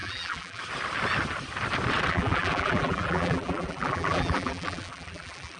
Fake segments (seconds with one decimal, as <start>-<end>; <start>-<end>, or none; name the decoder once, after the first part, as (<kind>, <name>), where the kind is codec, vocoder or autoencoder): 0.0-0.6 (vocoder, BigVGAN v2); 2.1-5.6